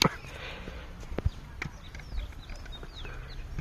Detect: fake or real real